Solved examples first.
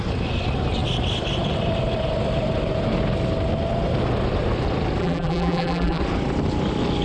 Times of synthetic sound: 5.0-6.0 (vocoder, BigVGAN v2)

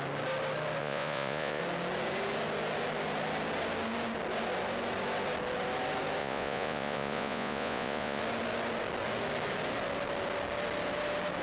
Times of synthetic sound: 0.8-1.6 (vocoder, Vocos); 6.2-8.2

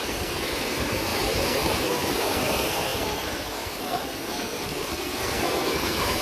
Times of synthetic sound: 0.0-6.2 (codec, SNAC)

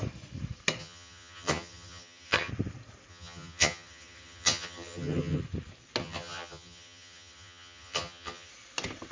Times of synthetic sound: 0.8-2.5 (vocoder, HiFi-GAN); 3.1-5.4; 6.0-8.5

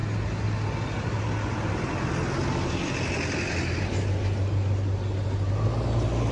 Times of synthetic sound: none

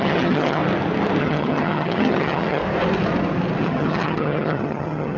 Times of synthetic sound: 0.0-0.6 (vocoder, HiFi-GAN); 1.2-2.6; 3.6-5.2